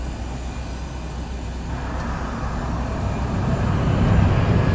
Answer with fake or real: real